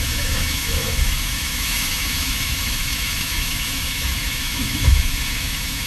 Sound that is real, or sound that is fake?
fake